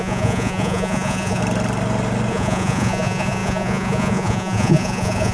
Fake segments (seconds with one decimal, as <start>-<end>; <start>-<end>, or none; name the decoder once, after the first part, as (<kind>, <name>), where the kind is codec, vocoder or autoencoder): 0.0-1.4 (vocoder, Vocos); 2.3-5.3